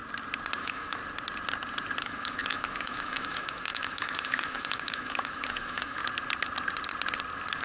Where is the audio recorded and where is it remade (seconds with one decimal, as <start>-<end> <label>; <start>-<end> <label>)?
0.0-0.6 recorded; 0.6-1.0 remade; 1.0-2.0 recorded; 2.0-6.0 remade; 6.0-7.6 recorded